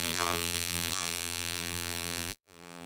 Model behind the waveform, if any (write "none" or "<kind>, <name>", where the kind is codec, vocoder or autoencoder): vocoder, BigVGAN v2